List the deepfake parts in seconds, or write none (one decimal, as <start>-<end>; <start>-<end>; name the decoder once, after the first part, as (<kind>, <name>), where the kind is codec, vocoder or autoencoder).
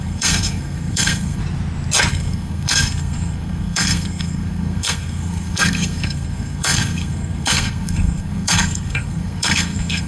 0.0-1.4 (codec, SNAC); 2.1-10.1